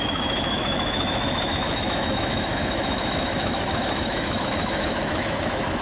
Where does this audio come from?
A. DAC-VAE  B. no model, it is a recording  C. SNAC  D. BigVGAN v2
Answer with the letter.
A